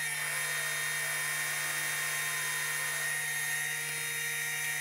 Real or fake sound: real